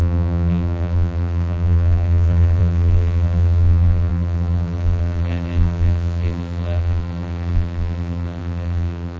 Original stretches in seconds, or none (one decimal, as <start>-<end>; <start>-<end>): none